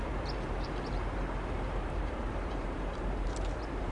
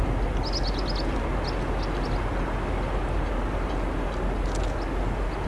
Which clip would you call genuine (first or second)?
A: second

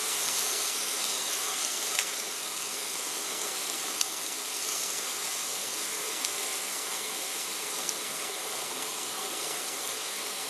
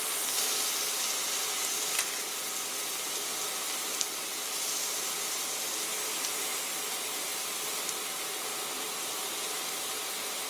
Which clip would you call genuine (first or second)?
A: second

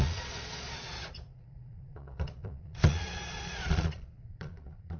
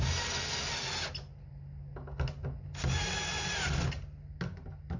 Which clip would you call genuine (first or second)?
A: second